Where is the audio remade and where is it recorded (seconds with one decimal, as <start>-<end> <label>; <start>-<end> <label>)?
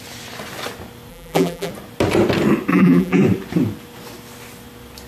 0.0-1.1 recorded; 1.1-1.7 remade; 1.7-2.7 recorded; 2.7-3.2 remade; 3.2-5.1 recorded